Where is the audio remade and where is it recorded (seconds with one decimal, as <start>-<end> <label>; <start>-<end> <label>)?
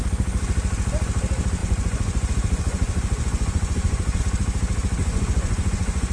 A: 0.0-1.6 recorded; 1.6-4.2 remade; 4.2-5.0 recorded; 5.0-6.1 remade